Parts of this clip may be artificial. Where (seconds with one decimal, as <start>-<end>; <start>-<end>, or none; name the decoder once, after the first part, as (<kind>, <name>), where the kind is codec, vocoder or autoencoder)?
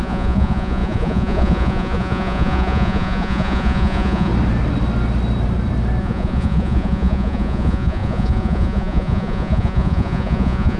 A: 0.0-4.3 (vocoder, Vocos); 6.0-10.8